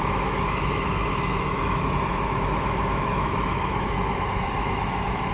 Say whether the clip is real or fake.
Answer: fake